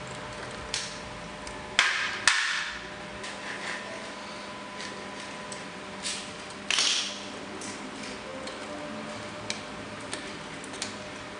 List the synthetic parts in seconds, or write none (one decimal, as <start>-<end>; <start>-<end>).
none